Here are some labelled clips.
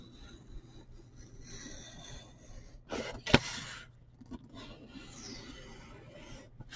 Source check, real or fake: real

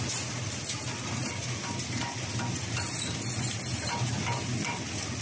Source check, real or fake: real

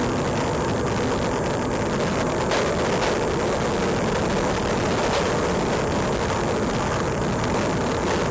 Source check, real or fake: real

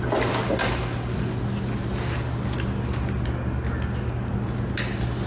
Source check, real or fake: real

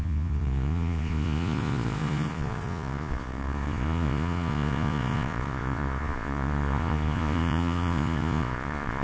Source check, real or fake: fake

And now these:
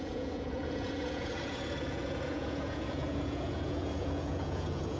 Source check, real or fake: fake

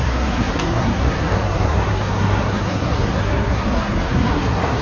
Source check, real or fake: fake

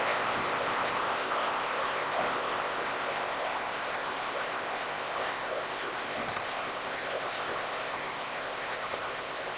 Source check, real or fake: fake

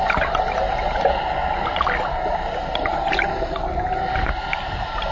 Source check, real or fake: real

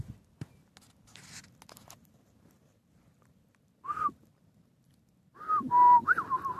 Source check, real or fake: real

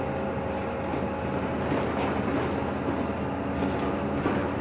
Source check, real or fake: real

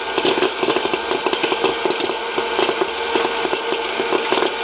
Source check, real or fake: real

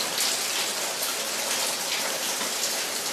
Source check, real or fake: real